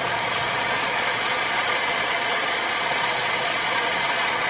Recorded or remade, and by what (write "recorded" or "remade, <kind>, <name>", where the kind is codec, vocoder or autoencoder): remade, vocoder, Vocos